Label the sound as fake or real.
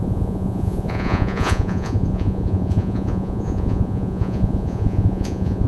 fake